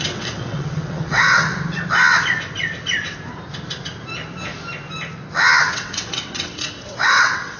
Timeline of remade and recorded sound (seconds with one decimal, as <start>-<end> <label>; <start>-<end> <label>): 0.0-1.5 remade; 1.5-5.7 recorded; 5.7-7.6 remade